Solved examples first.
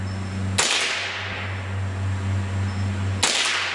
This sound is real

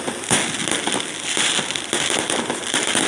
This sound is real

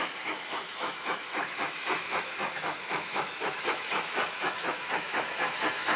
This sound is fake